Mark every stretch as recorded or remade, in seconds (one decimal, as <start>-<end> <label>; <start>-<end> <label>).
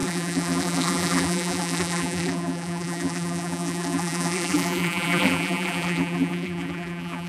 0.0-7.3 remade